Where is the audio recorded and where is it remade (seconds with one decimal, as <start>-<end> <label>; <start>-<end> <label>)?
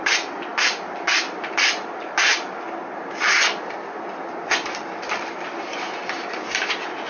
0.0-7.1 recorded